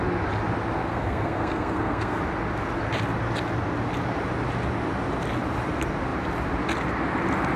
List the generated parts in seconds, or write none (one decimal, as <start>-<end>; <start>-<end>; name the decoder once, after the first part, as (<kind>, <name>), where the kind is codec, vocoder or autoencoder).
0.9-2.2 (codec, SNAC)